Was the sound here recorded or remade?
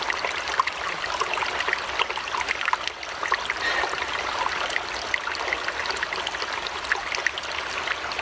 recorded